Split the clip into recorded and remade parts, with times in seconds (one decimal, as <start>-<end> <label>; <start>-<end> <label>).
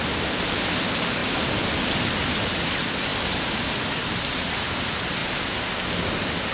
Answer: 0.0-5.2 remade; 5.2-6.1 recorded; 6.1-6.5 remade